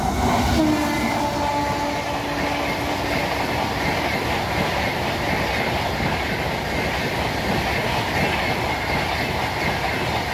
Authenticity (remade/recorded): recorded